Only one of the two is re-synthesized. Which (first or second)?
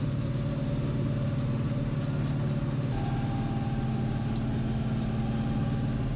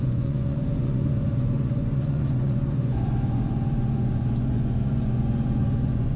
second